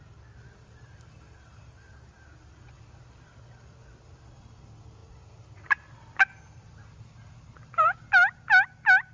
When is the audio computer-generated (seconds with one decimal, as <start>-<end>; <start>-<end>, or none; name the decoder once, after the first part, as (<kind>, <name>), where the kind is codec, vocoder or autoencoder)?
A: none